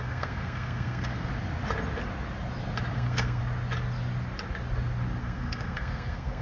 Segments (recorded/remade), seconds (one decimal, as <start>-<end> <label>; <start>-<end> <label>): 0.0-1.3 remade; 1.3-2.9 recorded; 2.9-3.4 remade; 3.4-5.2 recorded; 5.2-6.4 remade